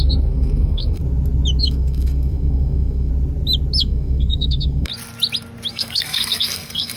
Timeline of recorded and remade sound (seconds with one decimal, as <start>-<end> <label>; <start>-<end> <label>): 0.0-1.0 remade; 1.0-1.6 recorded; 1.6-3.1 remade; 3.1-3.8 recorded; 3.8-4.9 remade; 4.9-5.7 recorded; 5.7-7.0 remade